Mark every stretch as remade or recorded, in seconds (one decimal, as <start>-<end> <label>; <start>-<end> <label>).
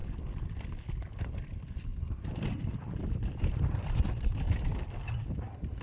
0.0-1.9 recorded; 1.9-4.0 remade; 4.0-5.8 recorded